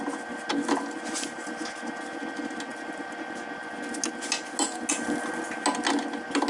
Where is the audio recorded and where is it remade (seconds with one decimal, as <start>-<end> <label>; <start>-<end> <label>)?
0.0-6.5 recorded

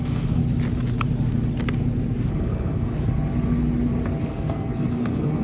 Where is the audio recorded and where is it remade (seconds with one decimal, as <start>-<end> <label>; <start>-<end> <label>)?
0.0-0.4 remade; 0.4-2.3 recorded; 2.3-2.9 remade; 2.9-4.2 recorded; 4.2-5.4 remade

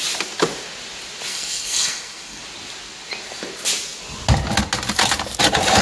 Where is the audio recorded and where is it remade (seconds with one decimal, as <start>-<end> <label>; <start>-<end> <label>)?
0.0-1.3 recorded; 1.3-2.4 remade; 2.4-5.8 recorded

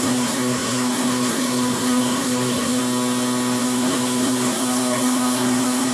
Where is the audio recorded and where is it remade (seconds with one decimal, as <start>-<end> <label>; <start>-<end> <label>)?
0.0-2.8 remade; 2.8-3.6 recorded; 3.6-5.9 remade